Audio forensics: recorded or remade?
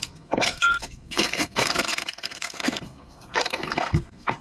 remade